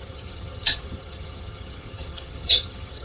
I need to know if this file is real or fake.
fake